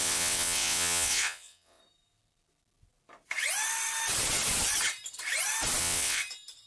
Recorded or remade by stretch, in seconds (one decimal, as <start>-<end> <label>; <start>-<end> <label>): 0.0-1.8 remade; 1.8-5.8 recorded; 5.8-6.2 remade; 6.2-6.7 recorded